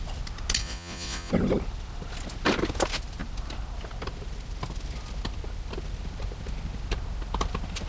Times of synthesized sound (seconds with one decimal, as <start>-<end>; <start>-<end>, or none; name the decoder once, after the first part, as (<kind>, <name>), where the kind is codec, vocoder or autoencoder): 0.6-1.3 (vocoder, Vocos)